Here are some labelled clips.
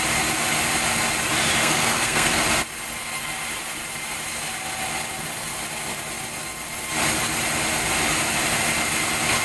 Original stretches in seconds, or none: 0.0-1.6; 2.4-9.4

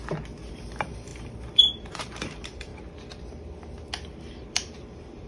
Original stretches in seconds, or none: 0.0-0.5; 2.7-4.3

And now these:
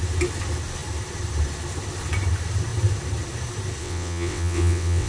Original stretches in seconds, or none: 0.0-3.8

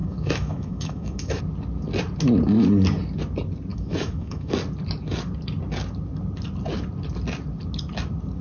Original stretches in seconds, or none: 1.4-3.7; 4.5-8.4

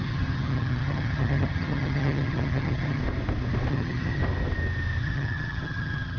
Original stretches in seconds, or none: 3.0-3.7; 4.2-5.0

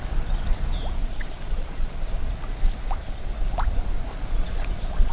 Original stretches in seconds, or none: 0.0-1.0; 2.0-4.1

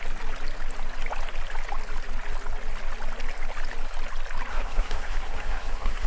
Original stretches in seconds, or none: 0.0-4.5

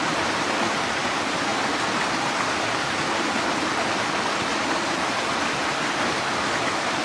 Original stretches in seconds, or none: 0.0-7.0